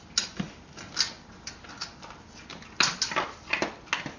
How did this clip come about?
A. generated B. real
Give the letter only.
B